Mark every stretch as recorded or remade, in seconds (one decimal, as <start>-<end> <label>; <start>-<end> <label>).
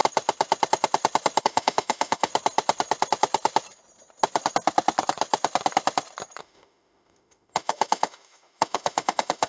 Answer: 0.0-1.4 recorded; 1.4-2.3 remade; 2.3-6.4 recorded; 6.4-9.5 remade